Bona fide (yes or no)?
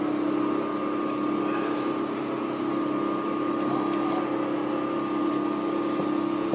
yes